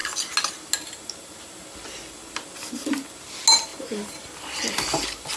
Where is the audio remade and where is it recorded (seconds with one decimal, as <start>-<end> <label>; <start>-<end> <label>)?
0.0-3.7 recorded; 3.7-4.4 remade; 4.4-5.4 recorded